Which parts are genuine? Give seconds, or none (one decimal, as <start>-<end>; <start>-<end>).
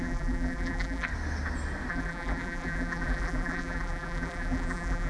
1.1-1.9